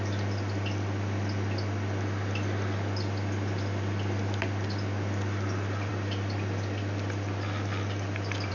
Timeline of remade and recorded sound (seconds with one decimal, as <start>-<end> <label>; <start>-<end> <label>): 0.0-8.5 recorded